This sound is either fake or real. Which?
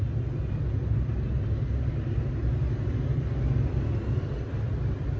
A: real